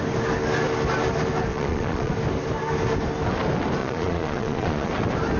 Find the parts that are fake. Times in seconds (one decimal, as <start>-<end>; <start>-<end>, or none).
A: 1.5-2.1; 3.8-4.9